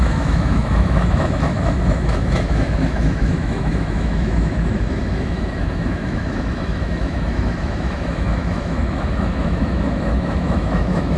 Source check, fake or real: fake